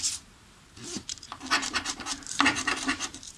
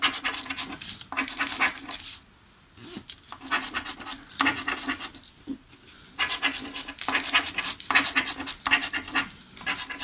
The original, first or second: second